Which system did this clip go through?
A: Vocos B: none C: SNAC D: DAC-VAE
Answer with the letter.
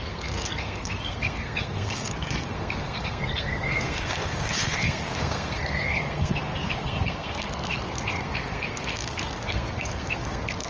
C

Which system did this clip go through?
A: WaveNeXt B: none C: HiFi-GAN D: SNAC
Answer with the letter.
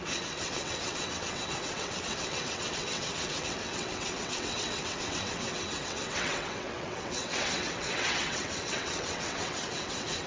A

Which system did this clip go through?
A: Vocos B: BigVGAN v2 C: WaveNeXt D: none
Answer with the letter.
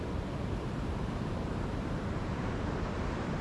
B